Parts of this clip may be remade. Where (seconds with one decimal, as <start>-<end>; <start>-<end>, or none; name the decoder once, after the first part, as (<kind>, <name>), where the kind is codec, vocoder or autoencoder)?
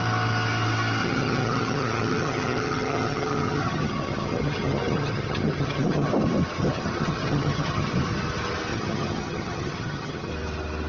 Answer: 1.0-6.1 (vocoder, HiFi-GAN); 6.6-7.9; 8.7-10.3